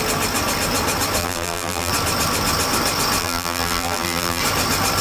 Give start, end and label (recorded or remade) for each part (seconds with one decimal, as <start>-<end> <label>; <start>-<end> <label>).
0.0-1.2 recorded; 1.2-1.9 remade; 1.9-3.2 recorded; 3.2-4.4 remade; 4.4-5.0 recorded